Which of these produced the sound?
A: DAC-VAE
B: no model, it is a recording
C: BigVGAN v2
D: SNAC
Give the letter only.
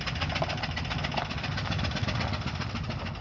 B